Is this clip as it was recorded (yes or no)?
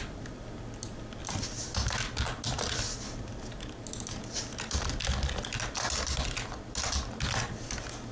yes